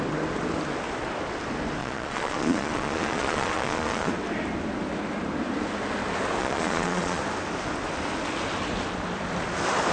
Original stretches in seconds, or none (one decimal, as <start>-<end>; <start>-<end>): 0.0-1.8; 4.1-6.4; 7.2-9.9